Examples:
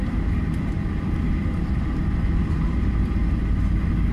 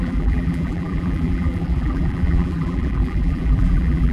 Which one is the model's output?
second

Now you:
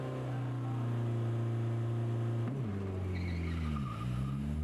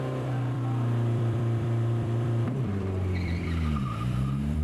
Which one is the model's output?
second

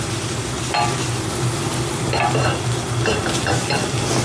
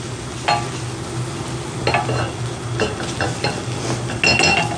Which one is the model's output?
first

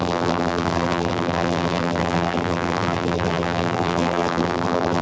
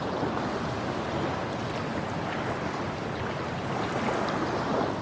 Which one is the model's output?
first